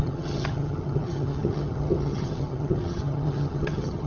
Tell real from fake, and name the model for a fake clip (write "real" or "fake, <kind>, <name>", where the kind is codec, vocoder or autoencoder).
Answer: fake, vocoder, HiFi-GAN